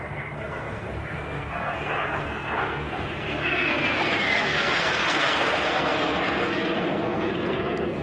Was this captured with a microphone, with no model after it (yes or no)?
no